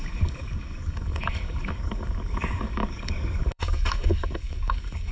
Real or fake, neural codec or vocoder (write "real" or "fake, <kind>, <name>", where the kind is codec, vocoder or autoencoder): fake, codec, DAC